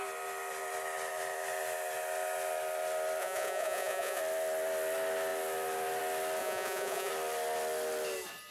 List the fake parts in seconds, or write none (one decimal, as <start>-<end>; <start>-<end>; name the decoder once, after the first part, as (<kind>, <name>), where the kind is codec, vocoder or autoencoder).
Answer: 3.2-4.2 (vocoder, Vocos); 6.4-7.1